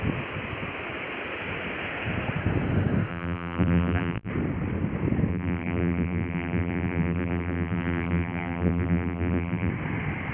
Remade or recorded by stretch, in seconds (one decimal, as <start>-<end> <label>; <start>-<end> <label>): 0.0-3.1 recorded; 3.1-4.3 remade; 4.3-5.3 recorded; 5.3-9.7 remade; 9.7-10.3 recorded